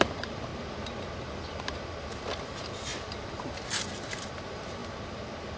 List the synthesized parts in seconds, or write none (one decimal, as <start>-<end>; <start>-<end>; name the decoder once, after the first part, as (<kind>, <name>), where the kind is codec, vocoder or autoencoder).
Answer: 0.0-0.5 (vocoder, BigVGAN v2); 1.2-4.8

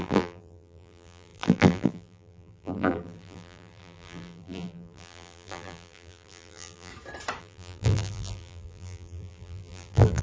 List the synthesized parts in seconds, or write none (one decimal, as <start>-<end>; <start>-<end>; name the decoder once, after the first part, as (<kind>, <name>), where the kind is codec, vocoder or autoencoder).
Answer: 0.0-6.9 (vocoder, BigVGAN v2); 7.4-10.2

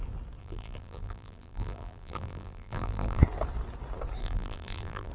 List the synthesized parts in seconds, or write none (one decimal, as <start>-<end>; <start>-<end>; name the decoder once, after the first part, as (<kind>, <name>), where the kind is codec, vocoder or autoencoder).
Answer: 0.4-3.2 (vocoder, BigVGAN v2); 4.2-5.1

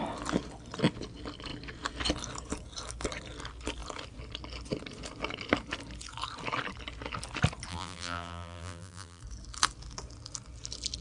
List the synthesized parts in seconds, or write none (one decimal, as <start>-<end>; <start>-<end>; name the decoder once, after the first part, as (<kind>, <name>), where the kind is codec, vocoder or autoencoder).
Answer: 7.7-9.2 (vocoder, BigVGAN v2)

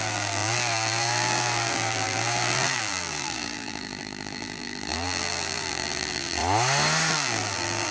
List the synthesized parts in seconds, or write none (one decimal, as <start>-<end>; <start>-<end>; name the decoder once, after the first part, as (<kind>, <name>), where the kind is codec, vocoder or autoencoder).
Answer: 0.0-6.4 (vocoder, BigVGAN v2); 7.1-7.9

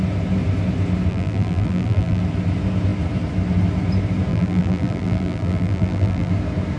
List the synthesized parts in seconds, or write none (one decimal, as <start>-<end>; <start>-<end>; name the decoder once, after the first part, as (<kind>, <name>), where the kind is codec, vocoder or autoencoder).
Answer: 1.1-2.2 (vocoder, BigVGAN v2); 4.3-6.3